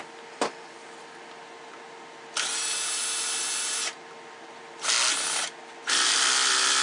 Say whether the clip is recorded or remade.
recorded